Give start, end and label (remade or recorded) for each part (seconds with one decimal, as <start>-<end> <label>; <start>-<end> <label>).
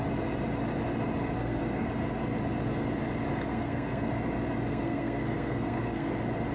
0.0-1.4 recorded; 1.4-1.9 remade; 1.9-3.5 recorded; 3.5-4.1 remade; 4.1-4.7 recorded; 4.7-6.1 remade; 6.1-6.5 recorded